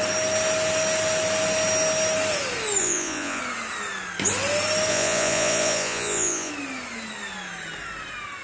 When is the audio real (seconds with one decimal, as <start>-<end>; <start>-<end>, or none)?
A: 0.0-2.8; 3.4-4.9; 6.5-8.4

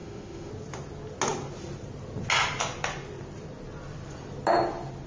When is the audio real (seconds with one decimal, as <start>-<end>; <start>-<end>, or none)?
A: 0.5-5.1

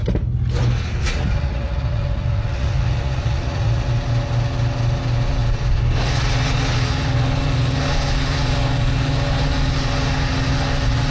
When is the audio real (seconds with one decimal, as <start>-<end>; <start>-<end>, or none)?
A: 0.0-1.0; 3.9-11.1